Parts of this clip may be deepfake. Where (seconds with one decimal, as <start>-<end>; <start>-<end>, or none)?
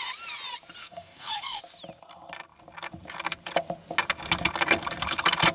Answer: 0.8-1.6